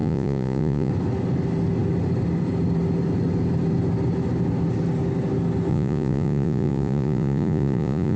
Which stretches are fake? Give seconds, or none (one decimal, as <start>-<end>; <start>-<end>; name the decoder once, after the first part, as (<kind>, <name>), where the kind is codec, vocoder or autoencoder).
0.0-0.9 (vocoder, Vocos); 5.7-8.2